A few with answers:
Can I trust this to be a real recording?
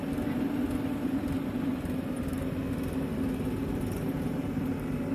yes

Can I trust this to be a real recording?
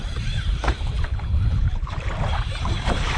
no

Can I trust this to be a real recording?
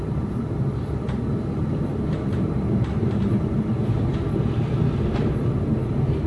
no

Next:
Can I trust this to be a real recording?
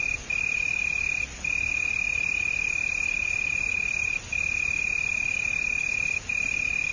yes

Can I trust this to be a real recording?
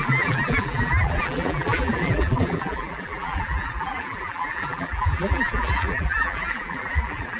no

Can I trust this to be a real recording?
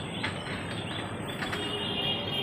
yes